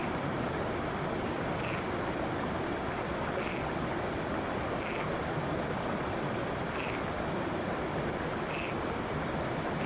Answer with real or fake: real